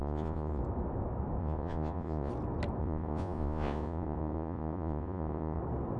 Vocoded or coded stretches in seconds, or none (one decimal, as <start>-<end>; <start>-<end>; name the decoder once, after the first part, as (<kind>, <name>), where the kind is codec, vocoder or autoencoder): 0.0-0.6 (vocoder, Vocos); 1.4-2.3; 2.8-5.6